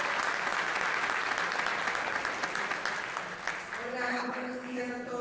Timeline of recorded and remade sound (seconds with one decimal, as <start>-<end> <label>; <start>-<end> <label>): 0.0-4.1 recorded; 4.1-4.8 remade; 4.8-5.2 recorded